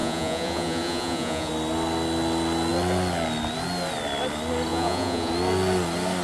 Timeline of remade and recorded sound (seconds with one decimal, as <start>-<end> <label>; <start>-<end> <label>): 0.0-1.5 remade; 1.5-4.7 recorded; 4.7-5.3 remade; 5.3-6.2 recorded